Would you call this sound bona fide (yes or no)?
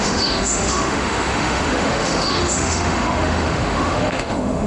no